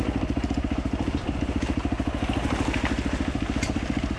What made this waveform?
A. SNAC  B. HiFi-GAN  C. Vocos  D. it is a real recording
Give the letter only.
D